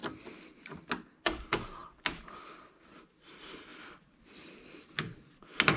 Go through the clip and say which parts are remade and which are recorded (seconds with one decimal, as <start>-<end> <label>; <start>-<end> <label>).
0.0-5.8 recorded